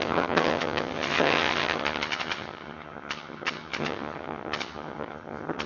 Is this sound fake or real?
fake